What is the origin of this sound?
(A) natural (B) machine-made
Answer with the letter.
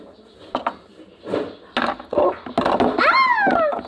A